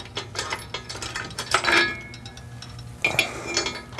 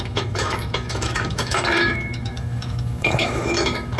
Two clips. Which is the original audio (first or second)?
first